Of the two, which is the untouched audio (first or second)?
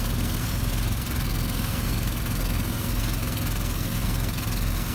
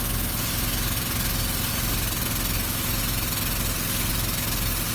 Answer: second